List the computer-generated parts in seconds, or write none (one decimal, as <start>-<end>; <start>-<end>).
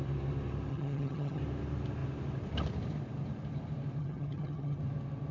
0.7-1.4; 4.0-4.8